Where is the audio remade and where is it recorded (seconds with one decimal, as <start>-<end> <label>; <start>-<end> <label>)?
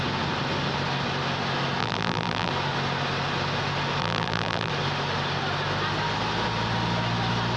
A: 0.0-1.8 recorded; 1.8-2.5 remade; 2.5-4.0 recorded; 4.0-4.7 remade; 4.7-7.6 recorded